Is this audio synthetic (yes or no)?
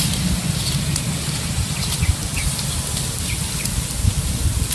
no